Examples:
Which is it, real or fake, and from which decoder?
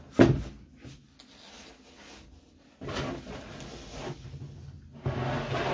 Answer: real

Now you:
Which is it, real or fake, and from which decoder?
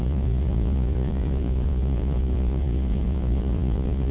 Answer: fake, vocoder, Vocos